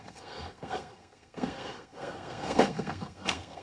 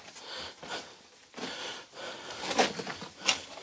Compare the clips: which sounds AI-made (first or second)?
first